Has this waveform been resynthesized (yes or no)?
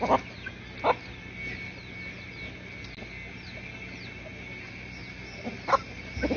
no